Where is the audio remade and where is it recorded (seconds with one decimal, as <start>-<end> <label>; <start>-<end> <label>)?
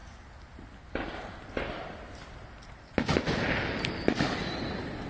0.0-5.1 recorded